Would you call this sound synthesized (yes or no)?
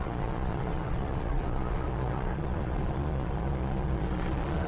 yes